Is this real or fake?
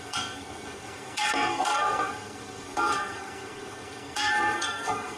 fake